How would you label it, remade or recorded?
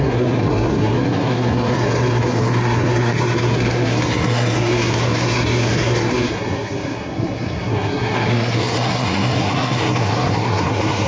remade